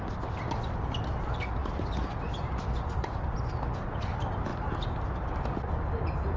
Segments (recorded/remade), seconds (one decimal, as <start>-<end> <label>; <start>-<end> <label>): 0.0-6.4 recorded